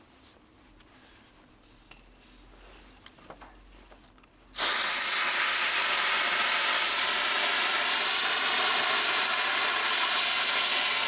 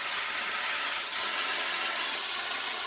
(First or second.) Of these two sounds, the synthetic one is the second